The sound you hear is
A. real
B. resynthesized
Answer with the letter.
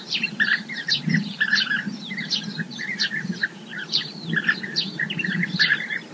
B